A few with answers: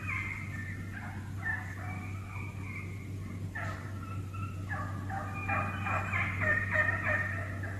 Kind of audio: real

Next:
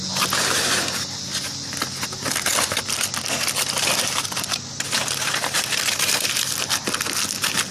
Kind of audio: real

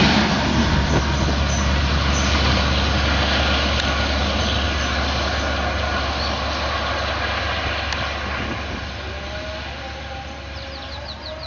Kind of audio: real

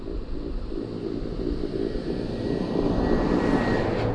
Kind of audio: real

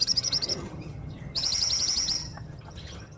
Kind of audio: fake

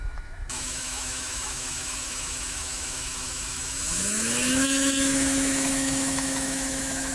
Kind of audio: fake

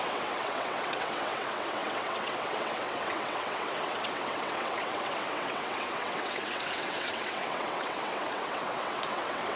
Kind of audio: fake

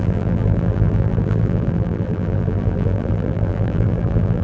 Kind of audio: fake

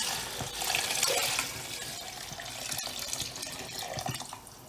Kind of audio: real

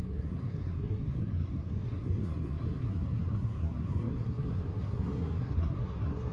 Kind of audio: fake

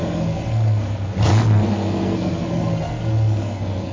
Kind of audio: fake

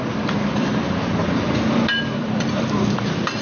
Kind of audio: fake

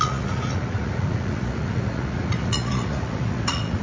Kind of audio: fake